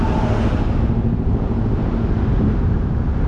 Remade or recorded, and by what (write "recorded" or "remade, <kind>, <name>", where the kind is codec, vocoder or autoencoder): recorded